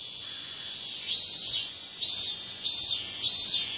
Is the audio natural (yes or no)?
no